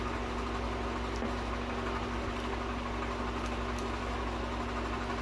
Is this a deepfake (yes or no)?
no